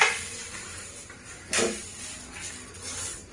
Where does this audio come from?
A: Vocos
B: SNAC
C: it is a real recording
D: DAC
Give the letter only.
C